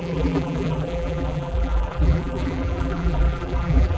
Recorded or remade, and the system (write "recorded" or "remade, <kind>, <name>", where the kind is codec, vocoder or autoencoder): remade, vocoder, BigVGAN v2